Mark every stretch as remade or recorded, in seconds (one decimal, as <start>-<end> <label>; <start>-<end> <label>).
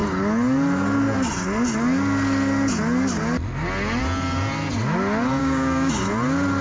0.0-5.4 recorded; 5.4-5.9 remade; 5.9-6.6 recorded